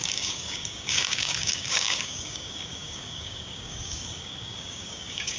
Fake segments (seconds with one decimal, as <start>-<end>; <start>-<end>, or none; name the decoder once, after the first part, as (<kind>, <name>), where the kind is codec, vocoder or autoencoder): 0.0-5.4 (codec, DAC)